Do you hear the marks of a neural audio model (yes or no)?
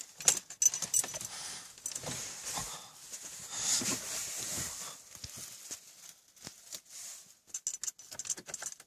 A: no